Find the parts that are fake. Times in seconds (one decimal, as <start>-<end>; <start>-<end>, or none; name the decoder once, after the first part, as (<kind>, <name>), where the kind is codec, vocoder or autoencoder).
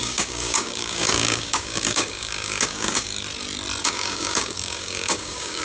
0.0-3.1 (codec, DAC); 3.8-5.6